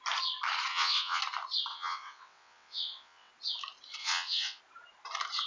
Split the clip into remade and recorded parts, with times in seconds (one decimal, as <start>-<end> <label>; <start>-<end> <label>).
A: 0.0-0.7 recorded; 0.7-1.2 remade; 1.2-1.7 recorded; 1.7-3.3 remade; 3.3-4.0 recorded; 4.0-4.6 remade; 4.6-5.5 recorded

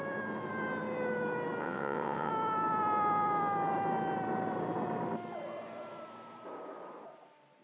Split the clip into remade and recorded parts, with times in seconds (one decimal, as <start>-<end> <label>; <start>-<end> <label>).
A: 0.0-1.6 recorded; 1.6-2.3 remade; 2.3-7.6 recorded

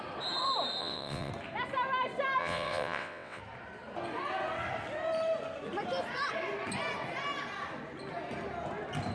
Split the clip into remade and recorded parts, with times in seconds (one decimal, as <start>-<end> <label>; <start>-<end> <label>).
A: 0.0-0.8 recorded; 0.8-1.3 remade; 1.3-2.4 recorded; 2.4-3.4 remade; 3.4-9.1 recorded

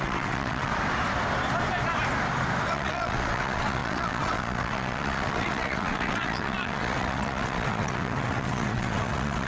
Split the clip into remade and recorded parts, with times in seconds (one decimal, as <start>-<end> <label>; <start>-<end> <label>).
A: 0.0-0.7 remade; 0.7-2.7 recorded; 2.7-9.5 remade

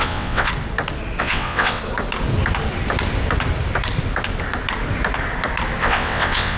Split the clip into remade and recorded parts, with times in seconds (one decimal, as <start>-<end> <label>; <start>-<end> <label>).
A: 0.0-0.5 remade; 0.5-1.2 recorded; 1.2-1.8 remade; 1.8-5.8 recorded; 5.8-6.6 remade